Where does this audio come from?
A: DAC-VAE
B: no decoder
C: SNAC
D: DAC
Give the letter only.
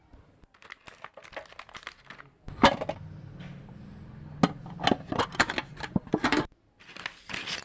B